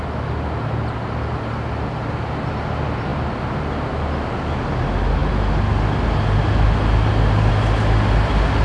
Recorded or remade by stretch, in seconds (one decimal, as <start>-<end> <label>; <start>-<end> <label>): 0.0-8.6 recorded